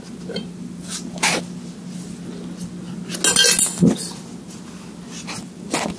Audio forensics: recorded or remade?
recorded